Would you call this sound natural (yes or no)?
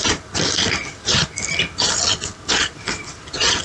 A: yes